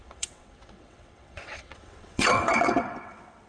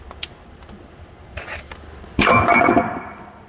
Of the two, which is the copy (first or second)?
first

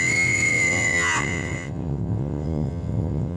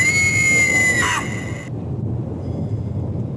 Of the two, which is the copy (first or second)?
first